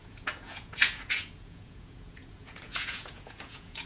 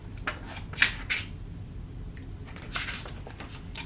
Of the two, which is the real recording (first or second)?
second